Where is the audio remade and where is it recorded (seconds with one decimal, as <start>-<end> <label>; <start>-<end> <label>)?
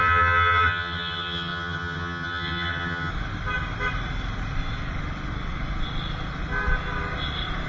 0.0-3.1 remade; 3.1-7.7 recorded